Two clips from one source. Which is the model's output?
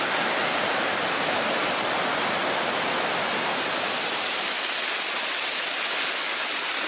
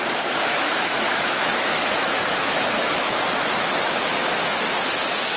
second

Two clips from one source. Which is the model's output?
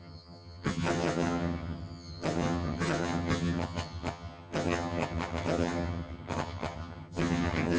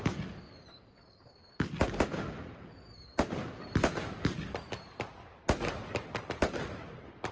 first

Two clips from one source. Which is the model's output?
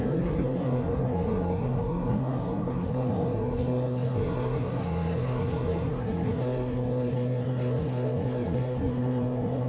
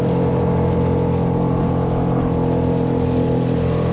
first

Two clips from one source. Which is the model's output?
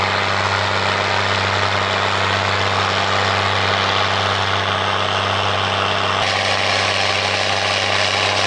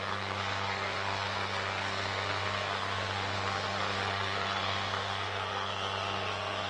second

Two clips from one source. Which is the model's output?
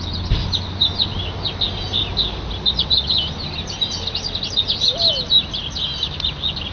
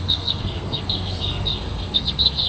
second